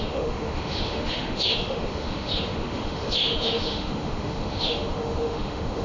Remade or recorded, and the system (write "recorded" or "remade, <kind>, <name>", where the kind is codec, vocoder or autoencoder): remade, autoencoder, DAC-VAE